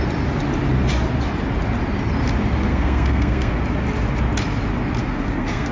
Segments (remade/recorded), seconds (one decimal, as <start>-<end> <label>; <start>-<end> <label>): 0.0-2.7 recorded; 2.7-3.6 remade; 3.6-5.0 recorded; 5.0-5.7 remade